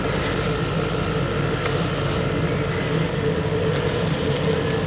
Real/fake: real